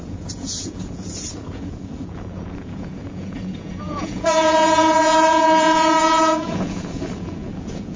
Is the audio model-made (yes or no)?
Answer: yes